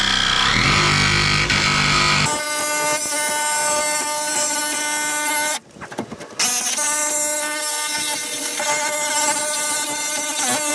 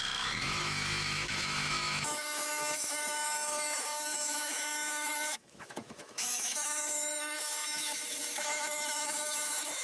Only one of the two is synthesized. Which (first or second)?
second